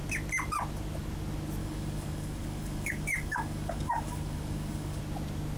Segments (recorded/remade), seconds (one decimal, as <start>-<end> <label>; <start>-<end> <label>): 0.0-1.6 recorded; 1.6-5.0 remade; 5.0-5.6 recorded